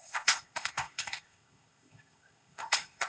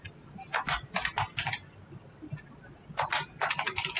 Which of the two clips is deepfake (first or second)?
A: first